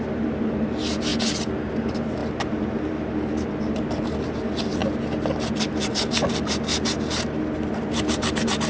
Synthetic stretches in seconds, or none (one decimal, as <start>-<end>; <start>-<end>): 0.0-1.1; 1.7-8.7